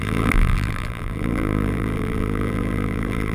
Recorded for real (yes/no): no